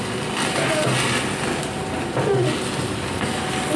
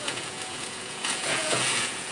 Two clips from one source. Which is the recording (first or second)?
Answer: first